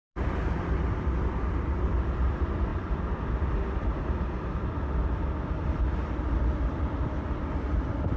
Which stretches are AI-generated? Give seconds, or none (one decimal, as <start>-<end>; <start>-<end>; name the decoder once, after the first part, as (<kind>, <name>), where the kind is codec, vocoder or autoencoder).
0.0-8.2 (vocoder, BigVGAN v2)